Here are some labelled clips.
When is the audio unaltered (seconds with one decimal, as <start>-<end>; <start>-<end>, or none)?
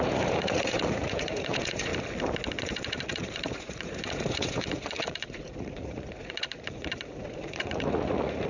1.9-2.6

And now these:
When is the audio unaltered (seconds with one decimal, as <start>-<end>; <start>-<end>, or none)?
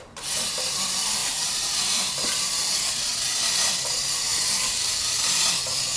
0.0-1.2; 2.7-4.3; 5.4-6.0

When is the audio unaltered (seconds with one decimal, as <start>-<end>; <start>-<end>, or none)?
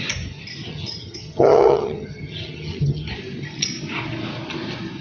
0.0-0.7; 3.1-5.0